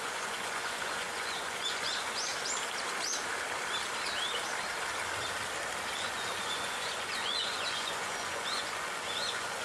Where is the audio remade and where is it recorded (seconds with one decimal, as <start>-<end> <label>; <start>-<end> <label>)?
0.0-2.3 remade; 2.3-6.0 recorded; 6.0-9.6 remade